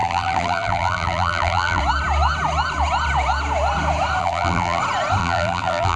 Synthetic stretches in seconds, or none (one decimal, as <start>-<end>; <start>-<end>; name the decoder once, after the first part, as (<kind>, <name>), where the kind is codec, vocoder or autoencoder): 0.0-1.8 (vocoder, BigVGAN v2); 4.2-4.8; 5.2-6.0